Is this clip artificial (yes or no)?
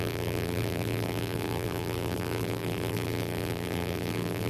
yes